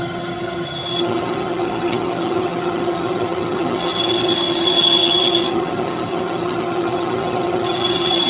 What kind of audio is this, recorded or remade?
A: remade